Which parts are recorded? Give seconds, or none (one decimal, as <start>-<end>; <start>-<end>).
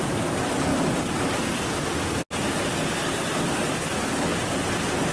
0.0-5.1